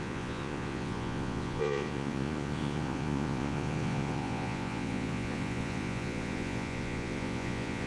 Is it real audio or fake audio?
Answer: fake